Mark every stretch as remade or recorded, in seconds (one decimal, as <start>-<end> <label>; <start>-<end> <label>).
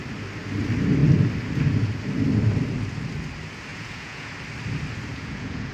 0.0-3.7 recorded; 3.7-4.3 remade; 4.3-5.1 recorded; 5.1-5.7 remade